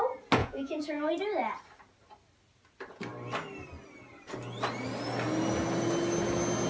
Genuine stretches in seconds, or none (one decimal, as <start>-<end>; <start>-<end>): 0.0-0.4; 1.1-6.7